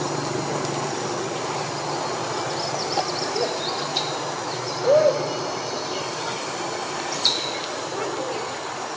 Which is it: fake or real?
real